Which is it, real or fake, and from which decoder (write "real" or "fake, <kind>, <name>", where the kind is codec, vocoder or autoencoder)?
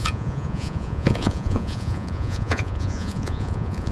fake, vocoder, Vocos